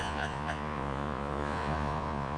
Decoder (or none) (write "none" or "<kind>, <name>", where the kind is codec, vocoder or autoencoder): vocoder, Vocos